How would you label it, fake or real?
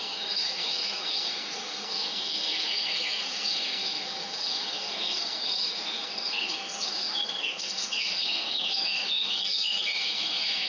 fake